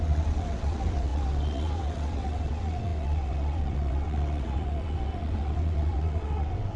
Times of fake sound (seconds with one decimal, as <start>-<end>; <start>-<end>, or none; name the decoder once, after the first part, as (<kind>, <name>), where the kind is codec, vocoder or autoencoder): 0.0-6.8 (vocoder, WaveNeXt)